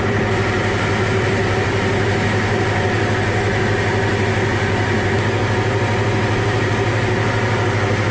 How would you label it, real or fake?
real